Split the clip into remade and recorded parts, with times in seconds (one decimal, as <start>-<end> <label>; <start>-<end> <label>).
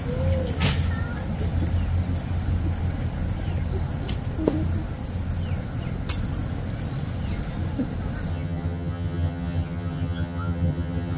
0.0-8.3 recorded; 8.3-11.2 remade